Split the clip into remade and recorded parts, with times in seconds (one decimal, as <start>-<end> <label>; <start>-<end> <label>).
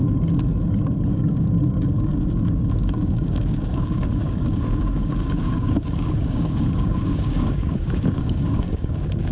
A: 0.0-1.1 recorded; 1.1-9.3 remade